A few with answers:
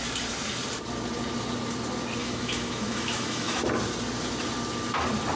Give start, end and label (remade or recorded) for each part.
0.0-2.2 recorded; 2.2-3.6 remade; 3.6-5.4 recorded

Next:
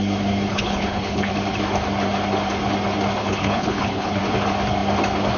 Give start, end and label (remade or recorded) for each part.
0.0-0.5 recorded; 0.5-1.3 remade; 1.3-3.2 recorded; 3.2-4.2 remade; 4.2-5.4 recorded

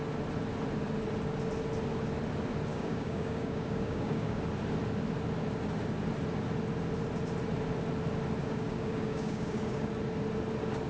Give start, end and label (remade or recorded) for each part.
0.0-2.7 recorded; 2.7-4.4 remade; 4.4-8.4 recorded; 8.4-9.9 remade; 9.9-10.9 recorded

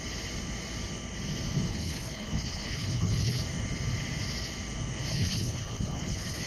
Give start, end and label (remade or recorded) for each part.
0.0-1.7 recorded; 1.7-3.4 remade; 3.4-5.1 recorded; 5.1-6.5 remade

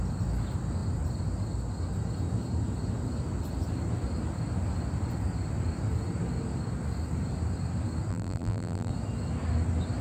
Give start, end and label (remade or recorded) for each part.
0.0-8.1 recorded; 8.1-8.9 remade; 8.9-10.0 recorded